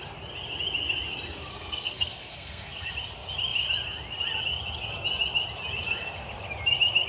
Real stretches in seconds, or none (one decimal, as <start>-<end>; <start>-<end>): 0.0-1.5; 2.9-7.1